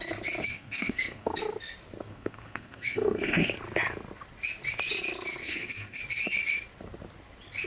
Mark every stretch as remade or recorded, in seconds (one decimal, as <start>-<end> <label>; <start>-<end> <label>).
0.0-0.4 recorded; 0.4-1.4 remade; 1.4-2.1 recorded; 2.1-3.5 remade; 3.5-5.4 recorded; 5.4-6.0 remade; 6.0-7.7 recorded